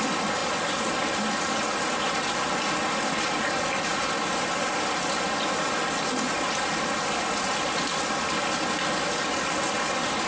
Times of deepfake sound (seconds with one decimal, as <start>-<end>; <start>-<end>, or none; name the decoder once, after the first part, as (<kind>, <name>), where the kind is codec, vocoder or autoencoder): none